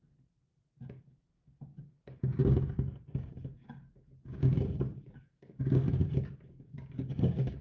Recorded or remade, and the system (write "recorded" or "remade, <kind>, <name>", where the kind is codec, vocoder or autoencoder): remade, codec, DAC